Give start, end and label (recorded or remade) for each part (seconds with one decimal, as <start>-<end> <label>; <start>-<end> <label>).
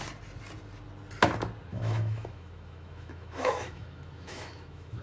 0.0-1.7 recorded; 1.7-5.0 remade